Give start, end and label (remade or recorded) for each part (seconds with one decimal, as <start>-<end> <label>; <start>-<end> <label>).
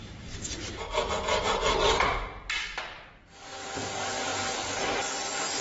0.0-5.6 recorded